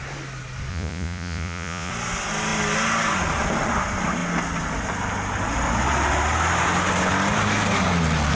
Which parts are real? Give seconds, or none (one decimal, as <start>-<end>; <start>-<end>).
0.0-0.7; 1.9-8.4